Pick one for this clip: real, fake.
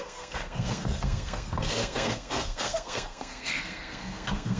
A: fake